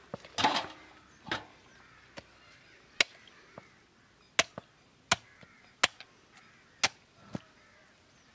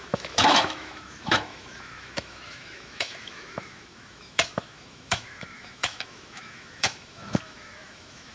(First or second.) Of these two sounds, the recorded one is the first